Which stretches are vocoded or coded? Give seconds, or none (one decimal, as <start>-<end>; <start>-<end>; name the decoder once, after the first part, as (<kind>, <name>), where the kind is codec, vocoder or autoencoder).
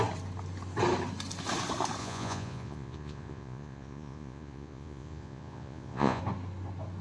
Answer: 2.0-6.2 (vocoder, Vocos)